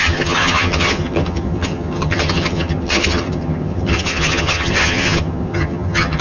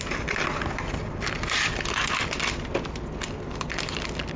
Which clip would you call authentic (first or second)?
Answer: second